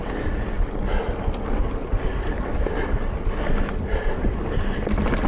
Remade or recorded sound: recorded